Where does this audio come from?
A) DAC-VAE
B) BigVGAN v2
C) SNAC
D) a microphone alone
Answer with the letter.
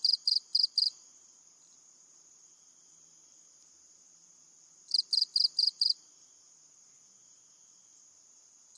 B